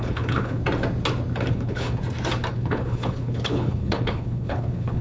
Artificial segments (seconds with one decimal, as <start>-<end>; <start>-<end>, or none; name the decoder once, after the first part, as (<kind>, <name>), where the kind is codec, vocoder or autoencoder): 0.0-0.6 (codec, HILCodec); 1.5-2.0; 2.5-5.0